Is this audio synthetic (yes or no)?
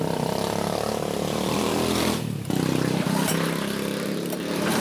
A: yes